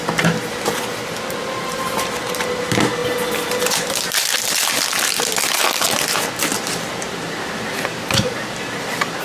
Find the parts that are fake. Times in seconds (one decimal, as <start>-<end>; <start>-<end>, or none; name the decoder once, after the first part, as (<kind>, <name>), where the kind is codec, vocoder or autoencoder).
6.5-9.2 (vocoder, BigVGAN v2)